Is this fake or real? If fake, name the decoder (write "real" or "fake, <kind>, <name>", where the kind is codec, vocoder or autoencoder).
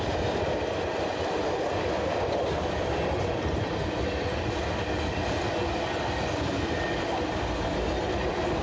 real